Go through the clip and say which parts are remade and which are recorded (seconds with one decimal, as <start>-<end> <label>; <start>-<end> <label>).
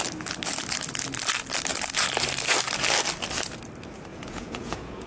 0.0-4.1 recorded; 4.1-5.1 remade